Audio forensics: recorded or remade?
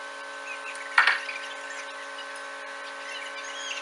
recorded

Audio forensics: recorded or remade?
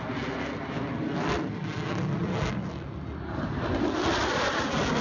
recorded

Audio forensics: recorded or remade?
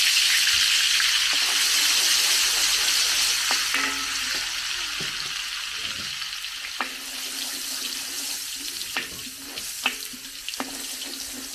recorded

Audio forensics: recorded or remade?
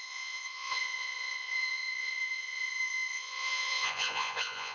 remade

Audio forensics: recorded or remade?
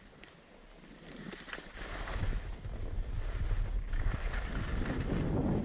recorded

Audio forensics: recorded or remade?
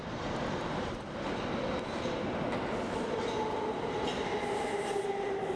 recorded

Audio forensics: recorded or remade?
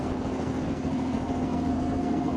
remade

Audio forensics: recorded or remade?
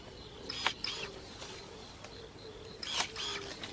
recorded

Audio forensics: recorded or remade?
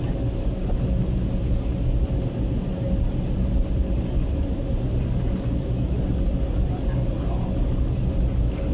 recorded